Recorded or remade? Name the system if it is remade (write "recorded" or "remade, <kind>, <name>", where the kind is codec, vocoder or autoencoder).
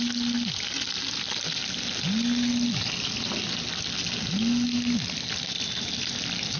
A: recorded